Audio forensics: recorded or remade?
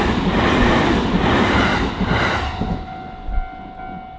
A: recorded